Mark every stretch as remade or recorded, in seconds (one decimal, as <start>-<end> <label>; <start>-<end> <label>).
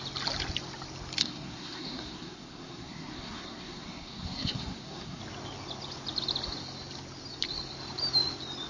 0.0-1.2 recorded; 1.2-5.2 remade; 5.2-8.7 recorded